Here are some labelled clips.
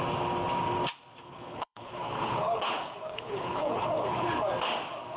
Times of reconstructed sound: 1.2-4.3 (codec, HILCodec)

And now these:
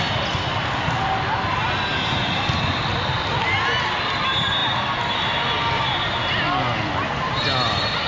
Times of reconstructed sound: none

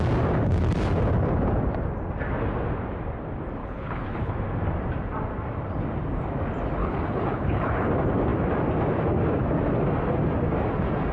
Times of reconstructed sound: 3.6-4.3 (codec, HILCodec); 6.8-7.9

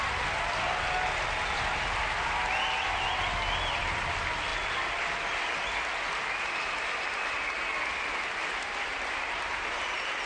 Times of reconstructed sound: none

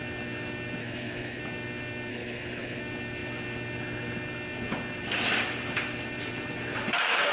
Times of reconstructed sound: 0.8-1.4 (codec, HILCodec); 2.1-2.8

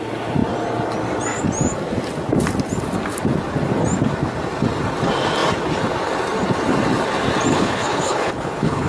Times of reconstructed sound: 7.5-8.9 (codec, HILCodec)